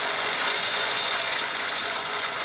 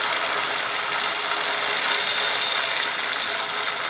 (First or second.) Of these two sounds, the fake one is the first